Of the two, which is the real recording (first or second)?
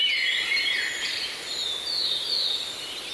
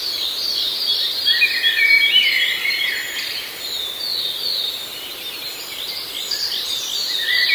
first